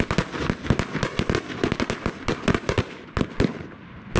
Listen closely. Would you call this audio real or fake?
real